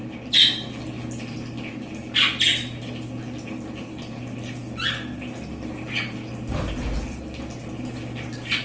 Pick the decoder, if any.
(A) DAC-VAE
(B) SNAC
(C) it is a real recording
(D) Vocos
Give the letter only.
C